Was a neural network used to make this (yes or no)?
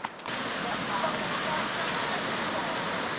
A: no